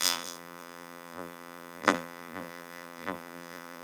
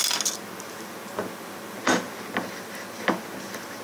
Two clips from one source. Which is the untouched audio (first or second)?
second